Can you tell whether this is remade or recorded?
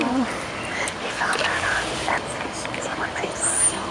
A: recorded